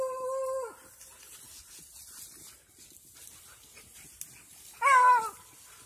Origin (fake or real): real